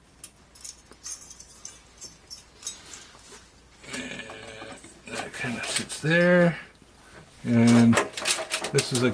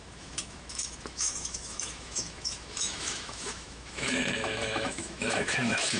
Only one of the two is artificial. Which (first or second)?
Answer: second